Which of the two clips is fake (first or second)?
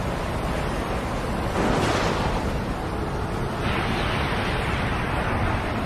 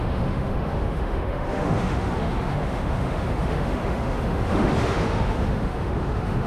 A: second